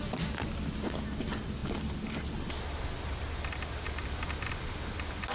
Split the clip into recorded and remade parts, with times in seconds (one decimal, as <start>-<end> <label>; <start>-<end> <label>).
0.0-5.3 recorded

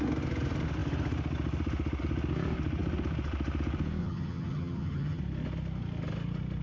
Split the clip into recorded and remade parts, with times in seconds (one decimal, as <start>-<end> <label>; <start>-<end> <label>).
0.0-4.0 recorded; 4.0-5.2 remade; 5.2-6.6 recorded

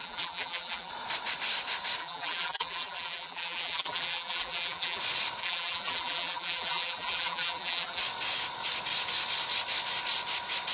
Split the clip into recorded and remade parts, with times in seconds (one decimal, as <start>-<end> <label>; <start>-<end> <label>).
0.0-0.9 remade; 0.9-2.0 recorded; 2.0-5.0 remade; 5.0-5.4 recorded; 5.4-8.0 remade; 8.0-10.7 recorded

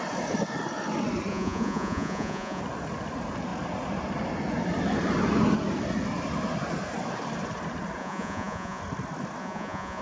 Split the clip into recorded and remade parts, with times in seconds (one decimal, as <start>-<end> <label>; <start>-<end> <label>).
0.0-1.3 recorded; 1.3-2.6 remade; 2.6-8.0 recorded; 8.0-8.8 remade; 8.8-9.4 recorded; 9.4-10.0 remade

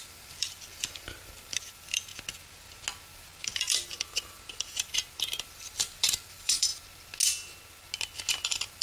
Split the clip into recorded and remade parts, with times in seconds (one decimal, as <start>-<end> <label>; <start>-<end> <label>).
0.0-2.1 remade; 2.1-3.4 recorded; 3.4-6.7 remade; 6.7-8.3 recorded; 8.3-8.8 remade

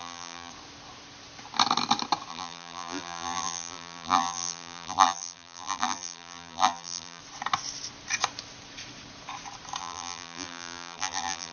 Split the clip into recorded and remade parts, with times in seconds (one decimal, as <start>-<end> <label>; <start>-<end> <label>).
0.0-0.5 remade; 0.5-2.3 recorded; 2.3-7.2 remade; 7.2-9.8 recorded; 9.8-11.5 remade

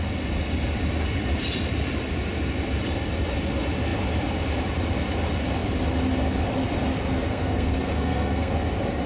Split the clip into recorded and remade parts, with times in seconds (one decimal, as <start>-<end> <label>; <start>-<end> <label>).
0.0-7.3 recorded; 7.3-8.5 remade; 8.5-9.1 recorded